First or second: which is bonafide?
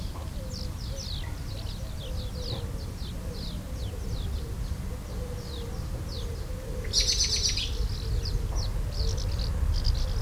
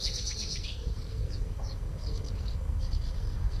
first